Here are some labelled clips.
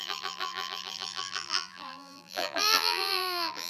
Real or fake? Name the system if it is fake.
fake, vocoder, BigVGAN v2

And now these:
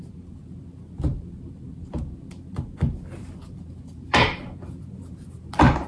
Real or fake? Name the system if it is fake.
fake, vocoder, BigVGAN v2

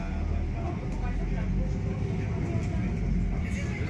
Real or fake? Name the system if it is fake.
real